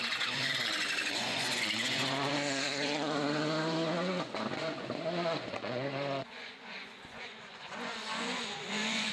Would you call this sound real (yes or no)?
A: no